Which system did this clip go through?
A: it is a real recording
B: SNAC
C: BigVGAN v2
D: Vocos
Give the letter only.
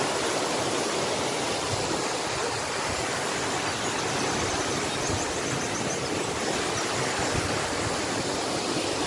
C